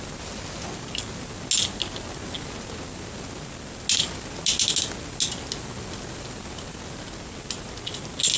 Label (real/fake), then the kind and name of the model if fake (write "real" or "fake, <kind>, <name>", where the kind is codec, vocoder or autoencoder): real